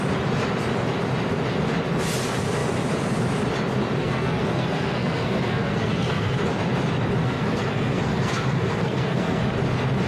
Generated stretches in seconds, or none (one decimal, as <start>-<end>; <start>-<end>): 4.0-6.4; 7.2-9.4

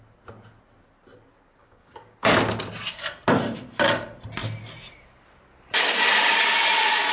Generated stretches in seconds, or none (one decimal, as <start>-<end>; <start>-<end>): 1.6-2.3

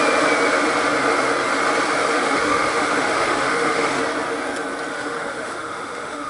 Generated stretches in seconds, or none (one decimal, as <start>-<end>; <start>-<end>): 2.0-4.0; 4.9-6.3

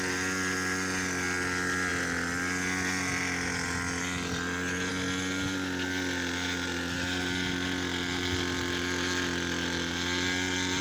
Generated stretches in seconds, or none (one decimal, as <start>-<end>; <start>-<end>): none

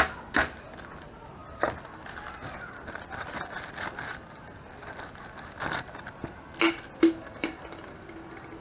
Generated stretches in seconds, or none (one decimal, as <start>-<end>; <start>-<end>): none

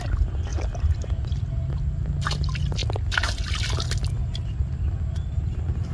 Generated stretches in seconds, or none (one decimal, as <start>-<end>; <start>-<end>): none